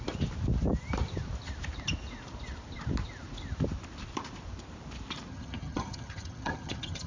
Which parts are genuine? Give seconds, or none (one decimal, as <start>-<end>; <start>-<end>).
0.0-5.3